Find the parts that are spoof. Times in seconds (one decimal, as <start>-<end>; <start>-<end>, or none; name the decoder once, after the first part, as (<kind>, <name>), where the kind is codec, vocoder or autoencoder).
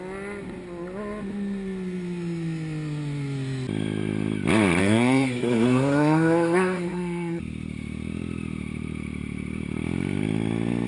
4.8-7.4 (codec, SNAC)